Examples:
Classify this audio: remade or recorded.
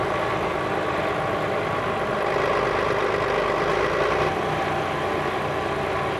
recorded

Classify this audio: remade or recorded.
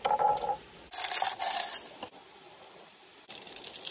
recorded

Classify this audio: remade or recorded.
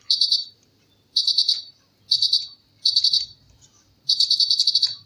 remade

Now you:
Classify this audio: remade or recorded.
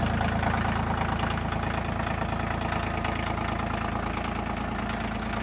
recorded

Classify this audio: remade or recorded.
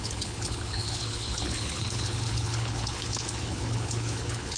remade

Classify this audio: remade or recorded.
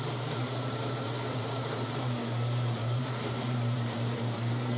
remade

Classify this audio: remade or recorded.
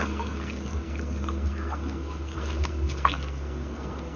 remade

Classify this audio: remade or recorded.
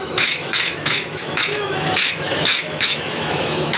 remade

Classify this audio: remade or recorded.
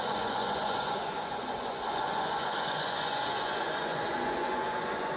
remade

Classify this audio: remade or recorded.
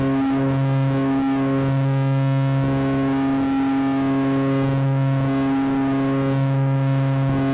recorded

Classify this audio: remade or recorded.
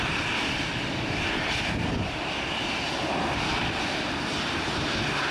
recorded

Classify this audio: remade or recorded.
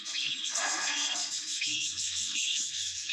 remade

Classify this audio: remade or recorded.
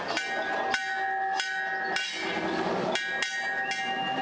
recorded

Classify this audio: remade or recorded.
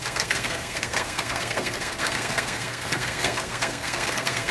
remade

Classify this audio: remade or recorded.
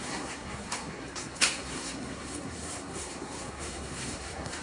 remade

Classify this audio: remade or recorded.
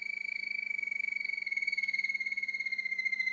recorded